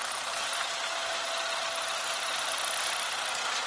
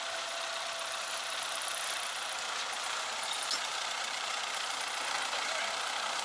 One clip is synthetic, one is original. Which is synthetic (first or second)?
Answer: second